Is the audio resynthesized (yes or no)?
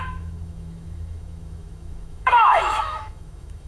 yes